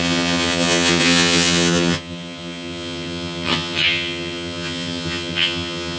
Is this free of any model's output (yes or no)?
no